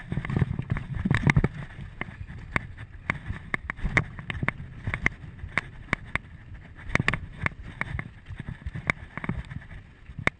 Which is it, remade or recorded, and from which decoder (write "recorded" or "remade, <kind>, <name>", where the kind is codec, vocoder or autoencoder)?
recorded